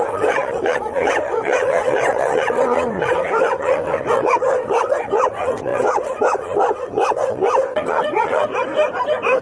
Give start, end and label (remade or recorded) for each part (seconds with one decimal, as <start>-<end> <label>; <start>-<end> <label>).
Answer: 0.0-8.5 remade; 8.5-9.4 recorded